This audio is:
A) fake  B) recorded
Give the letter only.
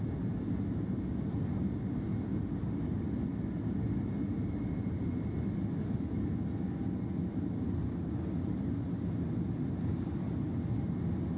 B